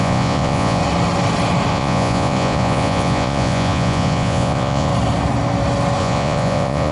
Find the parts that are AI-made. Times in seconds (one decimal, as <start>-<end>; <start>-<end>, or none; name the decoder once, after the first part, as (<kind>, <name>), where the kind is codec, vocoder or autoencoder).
0.0-0.8 (vocoder, Vocos); 1.7-4.9; 6.0-6.9